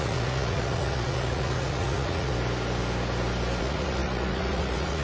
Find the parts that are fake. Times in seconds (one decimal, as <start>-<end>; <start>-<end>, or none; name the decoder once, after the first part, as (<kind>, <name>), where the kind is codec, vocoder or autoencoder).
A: 0.0-2.3 (vocoder, Vocos); 3.6-5.0